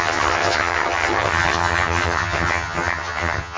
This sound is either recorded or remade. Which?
remade